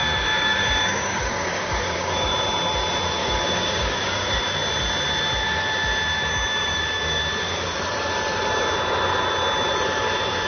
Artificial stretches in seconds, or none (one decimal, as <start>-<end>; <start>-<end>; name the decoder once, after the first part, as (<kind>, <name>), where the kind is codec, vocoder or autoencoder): 0.0-2.3 (codec, DAC); 3.2-4.4; 6.5-7.2